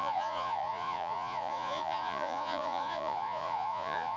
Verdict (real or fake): fake